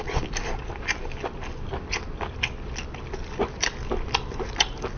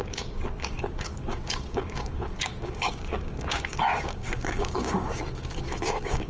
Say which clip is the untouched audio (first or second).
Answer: first